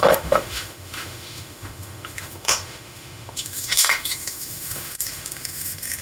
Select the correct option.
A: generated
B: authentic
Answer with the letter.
A